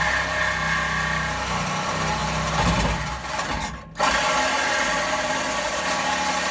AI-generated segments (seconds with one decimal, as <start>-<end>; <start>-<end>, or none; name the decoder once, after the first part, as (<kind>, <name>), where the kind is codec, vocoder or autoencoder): none